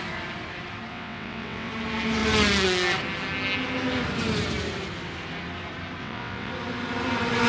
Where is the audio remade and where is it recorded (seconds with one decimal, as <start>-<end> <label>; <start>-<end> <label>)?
0.0-0.9 recorded; 0.9-1.7 remade; 1.7-6.0 recorded; 6.0-6.5 remade; 6.5-7.5 recorded